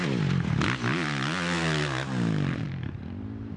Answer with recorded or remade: recorded